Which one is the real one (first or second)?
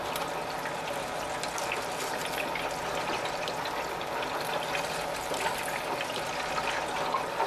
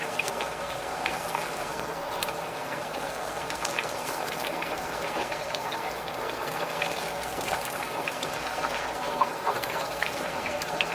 first